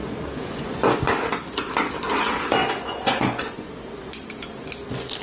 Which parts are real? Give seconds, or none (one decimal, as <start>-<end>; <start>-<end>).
0.8-2.6; 3.7-5.2